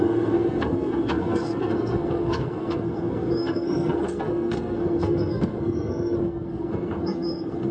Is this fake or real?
fake